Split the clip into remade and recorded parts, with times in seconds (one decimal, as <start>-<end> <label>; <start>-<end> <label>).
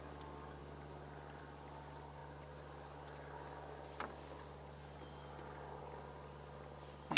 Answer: 0.0-7.2 recorded